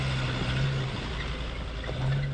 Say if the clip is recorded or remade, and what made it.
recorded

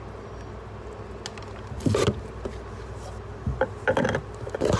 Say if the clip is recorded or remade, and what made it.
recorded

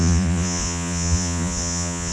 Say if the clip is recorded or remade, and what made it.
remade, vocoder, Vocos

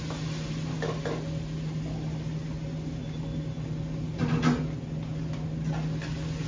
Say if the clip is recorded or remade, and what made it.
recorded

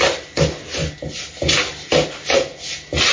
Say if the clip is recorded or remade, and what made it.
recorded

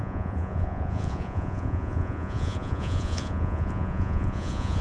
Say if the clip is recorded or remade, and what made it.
remade, vocoder, Vocos